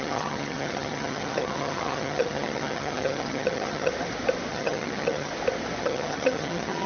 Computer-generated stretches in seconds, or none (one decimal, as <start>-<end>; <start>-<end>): 0.0-3.9; 4.5-5.3; 5.8-6.9